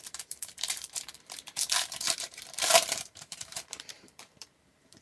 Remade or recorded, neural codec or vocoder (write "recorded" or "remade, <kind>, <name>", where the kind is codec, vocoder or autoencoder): remade, vocoder, BigVGAN v2